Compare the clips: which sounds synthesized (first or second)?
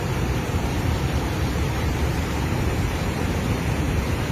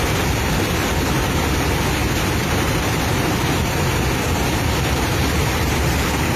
first